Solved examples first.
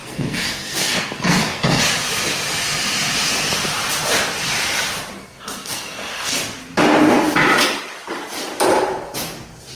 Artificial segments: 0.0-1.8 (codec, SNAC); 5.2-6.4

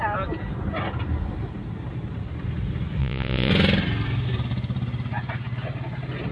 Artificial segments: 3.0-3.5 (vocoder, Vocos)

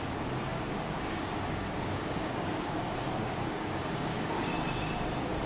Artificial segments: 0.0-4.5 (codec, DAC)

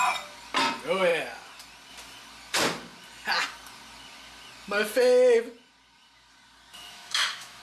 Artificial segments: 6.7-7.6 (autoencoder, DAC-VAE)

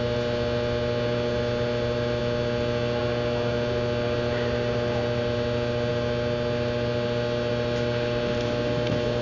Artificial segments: none

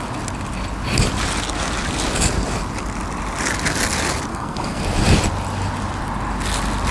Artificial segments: 4.3-4.8 (codec, SNAC)